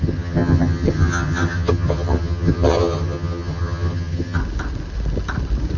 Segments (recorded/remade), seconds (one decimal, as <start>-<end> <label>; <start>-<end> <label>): 0.0-4.4 remade; 4.4-5.8 recorded